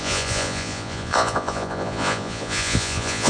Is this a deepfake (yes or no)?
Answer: yes